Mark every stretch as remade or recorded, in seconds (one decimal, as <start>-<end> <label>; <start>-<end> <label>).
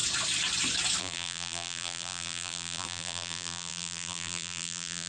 0.0-1.0 recorded; 1.0-5.1 remade